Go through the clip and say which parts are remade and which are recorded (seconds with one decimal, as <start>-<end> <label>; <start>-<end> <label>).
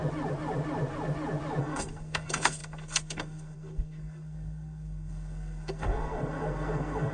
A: 0.0-1.6 recorded; 1.6-7.1 remade